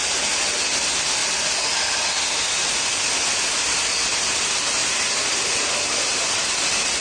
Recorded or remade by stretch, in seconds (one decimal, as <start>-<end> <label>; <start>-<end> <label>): 0.0-7.0 recorded